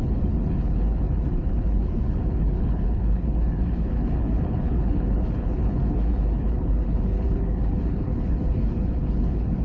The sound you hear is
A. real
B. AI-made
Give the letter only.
B